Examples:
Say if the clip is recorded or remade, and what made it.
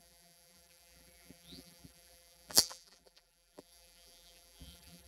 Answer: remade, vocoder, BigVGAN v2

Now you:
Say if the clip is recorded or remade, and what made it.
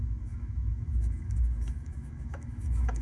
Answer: remade, autoencoder, DAC-VAE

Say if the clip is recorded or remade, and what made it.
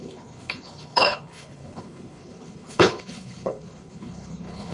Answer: remade, codec, HILCodec